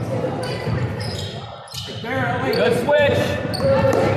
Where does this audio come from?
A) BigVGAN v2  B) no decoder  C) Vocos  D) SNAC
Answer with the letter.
A